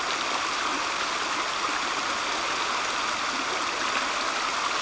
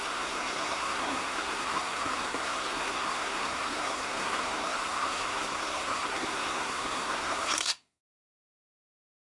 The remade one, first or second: second